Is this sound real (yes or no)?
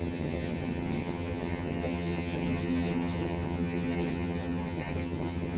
no